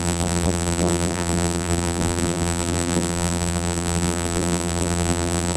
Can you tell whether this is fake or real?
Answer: fake